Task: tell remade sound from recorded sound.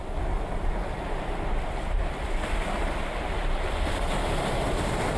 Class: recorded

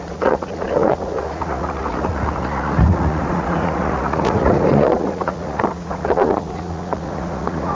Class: remade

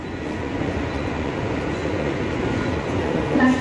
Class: remade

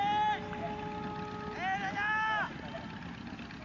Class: recorded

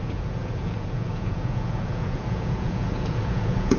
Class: remade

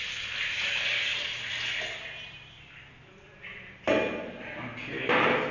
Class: recorded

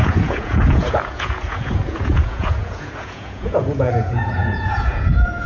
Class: remade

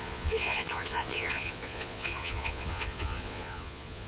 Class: remade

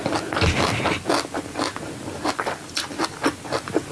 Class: recorded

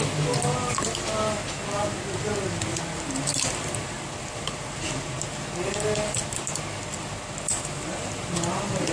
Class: recorded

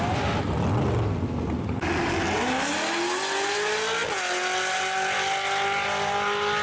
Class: recorded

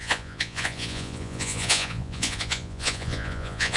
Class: remade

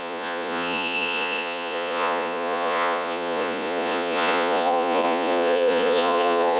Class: remade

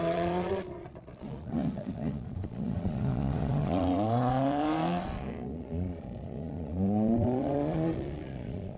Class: remade